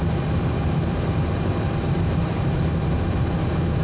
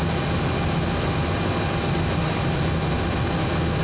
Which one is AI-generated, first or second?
first